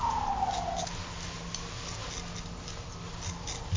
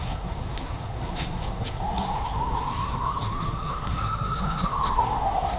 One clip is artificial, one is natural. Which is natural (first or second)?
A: first